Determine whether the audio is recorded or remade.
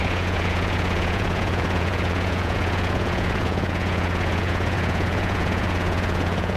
remade